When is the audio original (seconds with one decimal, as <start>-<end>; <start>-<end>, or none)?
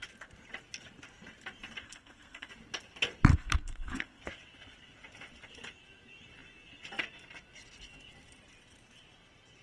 0.0-1.8; 2.5-3.3; 4.2-9.6